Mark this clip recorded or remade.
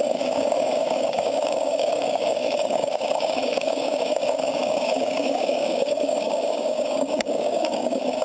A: remade